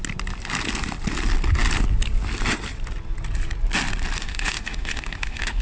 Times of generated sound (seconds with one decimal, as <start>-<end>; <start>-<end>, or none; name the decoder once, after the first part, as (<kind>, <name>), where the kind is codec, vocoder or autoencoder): 4.2-5.6 (autoencoder, DAC-VAE)